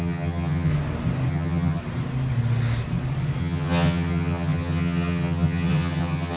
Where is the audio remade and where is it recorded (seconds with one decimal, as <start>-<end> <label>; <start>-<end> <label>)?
0.0-0.7 remade; 0.7-1.3 recorded; 1.3-1.8 remade; 1.8-3.4 recorded; 3.4-6.4 remade